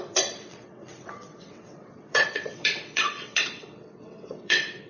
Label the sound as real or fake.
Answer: fake